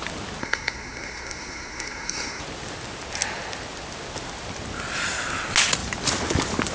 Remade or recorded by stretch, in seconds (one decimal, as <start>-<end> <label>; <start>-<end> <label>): 0.0-0.4 recorded; 0.4-2.4 remade; 2.4-6.7 recorded